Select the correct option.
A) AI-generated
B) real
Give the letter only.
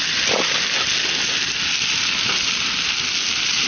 B